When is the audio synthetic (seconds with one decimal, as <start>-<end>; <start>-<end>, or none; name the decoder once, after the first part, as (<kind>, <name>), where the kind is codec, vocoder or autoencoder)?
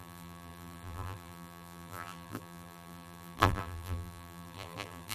0.0-5.1 (vocoder, BigVGAN v2)